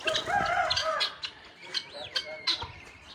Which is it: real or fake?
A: real